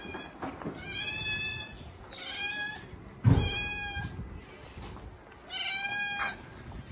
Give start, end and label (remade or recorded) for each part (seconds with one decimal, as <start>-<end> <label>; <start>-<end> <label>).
0.0-1.5 recorded; 1.5-2.0 remade; 2.0-6.9 recorded

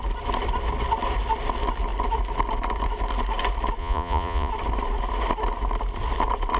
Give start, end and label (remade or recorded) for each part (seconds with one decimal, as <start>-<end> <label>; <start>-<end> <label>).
0.0-3.8 recorded; 3.8-4.5 remade; 4.5-6.6 recorded

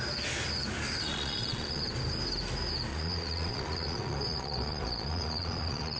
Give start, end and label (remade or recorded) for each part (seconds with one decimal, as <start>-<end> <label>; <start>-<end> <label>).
0.0-1.1 recorded; 1.1-1.8 remade; 1.8-2.9 recorded; 2.9-6.0 remade

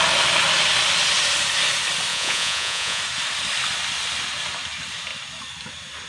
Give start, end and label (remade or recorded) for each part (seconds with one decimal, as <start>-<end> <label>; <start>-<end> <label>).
0.0-2.1 recorded; 2.1-3.0 remade; 3.0-6.1 recorded

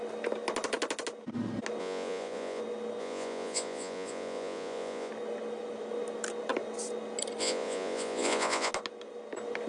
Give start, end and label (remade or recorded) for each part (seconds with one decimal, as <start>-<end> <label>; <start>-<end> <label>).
0.0-1.8 recorded; 1.8-2.6 remade; 2.6-3.0 recorded; 3.0-5.1 remade; 5.1-7.4 recorded; 7.4-8.7 remade; 8.7-9.7 recorded

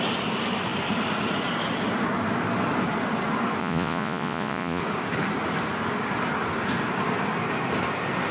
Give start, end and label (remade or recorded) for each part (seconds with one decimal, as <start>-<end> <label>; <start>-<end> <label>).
0.0-3.6 recorded; 3.6-4.8 remade; 4.8-8.3 recorded

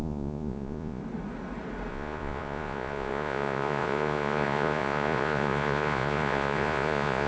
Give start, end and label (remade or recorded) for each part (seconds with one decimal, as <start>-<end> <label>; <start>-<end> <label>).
0.0-1.0 remade; 1.0-1.9 recorded; 1.9-7.3 remade